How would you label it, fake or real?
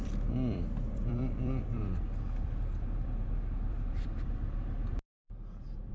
fake